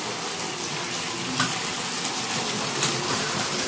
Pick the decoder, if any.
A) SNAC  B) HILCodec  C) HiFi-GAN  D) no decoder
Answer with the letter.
D